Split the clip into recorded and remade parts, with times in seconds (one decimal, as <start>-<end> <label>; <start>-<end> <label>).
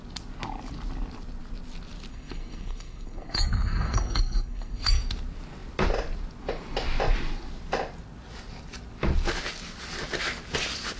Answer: 0.0-2.1 recorded; 2.1-5.0 remade; 5.0-11.0 recorded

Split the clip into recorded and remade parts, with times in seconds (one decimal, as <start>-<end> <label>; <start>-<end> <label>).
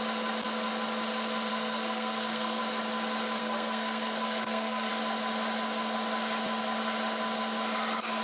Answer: 0.0-1.5 recorded; 1.5-2.6 remade; 2.6-3.4 recorded; 3.4-4.9 remade; 4.9-8.2 recorded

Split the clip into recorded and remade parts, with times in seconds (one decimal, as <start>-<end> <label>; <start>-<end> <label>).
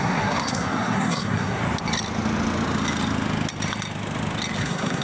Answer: 0.0-1.6 remade; 1.6-4.6 recorded; 4.6-5.0 remade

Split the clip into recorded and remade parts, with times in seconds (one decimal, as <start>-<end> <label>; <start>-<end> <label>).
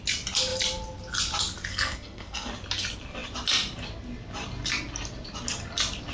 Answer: 0.0-1.7 recorded; 1.7-2.5 remade; 2.5-6.1 recorded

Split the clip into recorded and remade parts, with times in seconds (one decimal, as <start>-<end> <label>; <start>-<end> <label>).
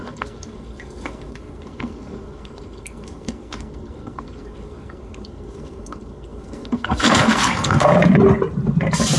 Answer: 0.0-7.9 remade; 7.9-9.2 recorded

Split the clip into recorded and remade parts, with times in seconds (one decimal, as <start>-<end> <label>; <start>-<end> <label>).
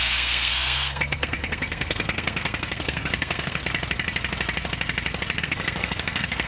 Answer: 0.0-3.6 remade; 3.6-5.4 recorded; 5.4-6.5 remade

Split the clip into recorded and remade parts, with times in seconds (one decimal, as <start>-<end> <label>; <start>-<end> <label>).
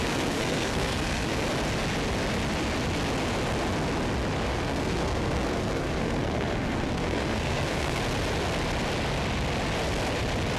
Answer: 0.0-1.4 remade; 1.4-4.5 recorded; 4.5-8.0 remade; 8.0-10.6 recorded